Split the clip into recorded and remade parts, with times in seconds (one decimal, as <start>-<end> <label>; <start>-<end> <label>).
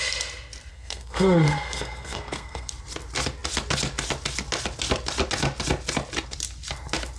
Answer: 0.0-0.7 recorded; 0.7-2.7 remade; 2.7-7.2 recorded